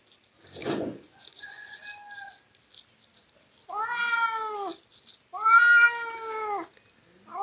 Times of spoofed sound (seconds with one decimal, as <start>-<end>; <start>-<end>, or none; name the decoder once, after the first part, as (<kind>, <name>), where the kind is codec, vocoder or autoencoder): 0.6-1.8 (vocoder, Vocos)